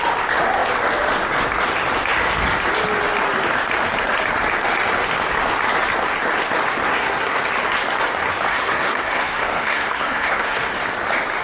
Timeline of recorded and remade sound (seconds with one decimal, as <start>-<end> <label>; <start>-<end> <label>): 0.0-6.8 recorded; 6.8-7.4 remade; 7.4-8.5 recorded; 8.5-10.7 remade; 10.7-11.4 recorded